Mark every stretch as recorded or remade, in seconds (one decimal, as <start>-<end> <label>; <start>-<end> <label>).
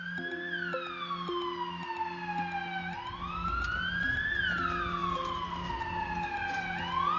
0.0-7.2 recorded